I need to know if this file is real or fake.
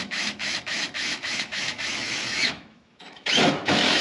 fake